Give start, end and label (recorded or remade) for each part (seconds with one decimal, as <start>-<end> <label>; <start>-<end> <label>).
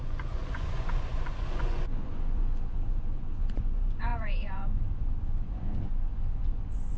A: 0.0-7.0 remade